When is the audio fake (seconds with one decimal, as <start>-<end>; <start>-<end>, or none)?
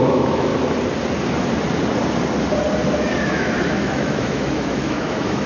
0.0-0.5; 3.2-5.5